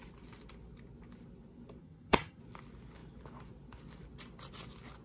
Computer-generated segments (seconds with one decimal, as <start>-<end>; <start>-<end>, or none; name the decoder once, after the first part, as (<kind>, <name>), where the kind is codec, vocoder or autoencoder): 1.8-2.4 (vocoder, HiFi-GAN)